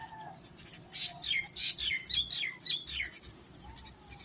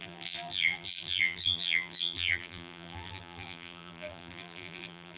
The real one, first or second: first